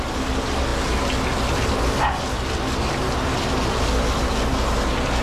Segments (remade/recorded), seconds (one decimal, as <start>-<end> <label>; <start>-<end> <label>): 0.0-5.2 recorded